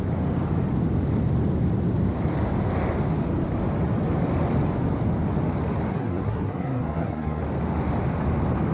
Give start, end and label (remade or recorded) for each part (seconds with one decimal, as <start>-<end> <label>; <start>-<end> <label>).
0.0-5.9 recorded; 5.9-7.4 remade; 7.4-8.7 recorded